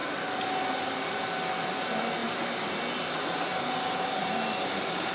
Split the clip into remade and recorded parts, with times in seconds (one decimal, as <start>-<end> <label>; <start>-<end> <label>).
0.0-5.1 recorded